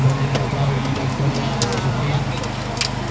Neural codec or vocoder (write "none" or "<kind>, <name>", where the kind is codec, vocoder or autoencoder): none